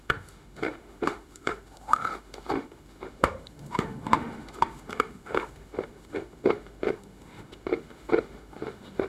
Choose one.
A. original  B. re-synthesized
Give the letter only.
B